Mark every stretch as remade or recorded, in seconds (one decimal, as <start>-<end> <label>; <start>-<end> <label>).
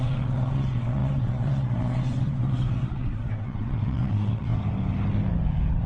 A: 0.0-4.5 remade; 4.5-5.9 recorded